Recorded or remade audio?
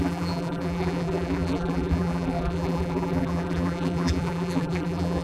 remade